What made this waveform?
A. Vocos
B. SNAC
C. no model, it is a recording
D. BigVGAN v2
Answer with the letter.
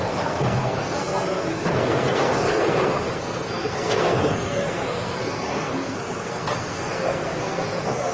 B